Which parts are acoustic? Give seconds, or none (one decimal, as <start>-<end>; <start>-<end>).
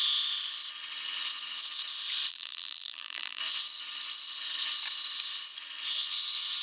0.0-2.3; 3.4-6.6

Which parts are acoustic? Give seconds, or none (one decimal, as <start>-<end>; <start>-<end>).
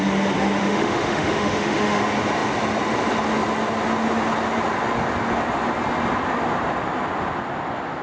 0.0-0.6; 2.0-8.0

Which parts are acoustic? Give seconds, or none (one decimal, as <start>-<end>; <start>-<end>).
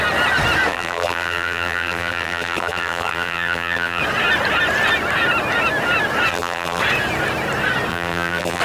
0.0-0.7; 4.0-6.3; 6.8-7.9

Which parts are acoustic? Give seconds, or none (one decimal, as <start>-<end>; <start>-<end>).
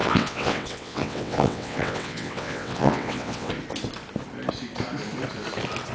3.5-5.9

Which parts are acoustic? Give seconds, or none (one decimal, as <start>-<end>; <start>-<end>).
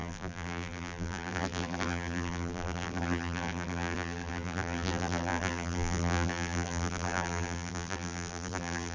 none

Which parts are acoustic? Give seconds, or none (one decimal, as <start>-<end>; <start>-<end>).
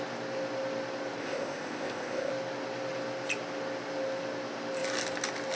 0.0-1.2; 2.3-5.6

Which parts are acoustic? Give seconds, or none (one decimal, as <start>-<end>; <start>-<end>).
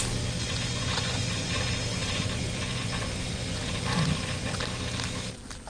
0.0-0.4; 1.5-1.9; 4.6-5.7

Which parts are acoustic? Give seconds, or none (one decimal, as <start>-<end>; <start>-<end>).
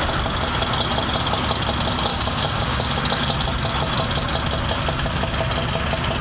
0.0-2.1; 3.0-6.2